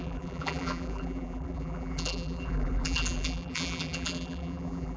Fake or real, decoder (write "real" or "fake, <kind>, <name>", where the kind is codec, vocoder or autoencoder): fake, vocoder, BigVGAN v2